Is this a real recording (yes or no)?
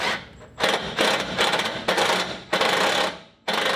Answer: yes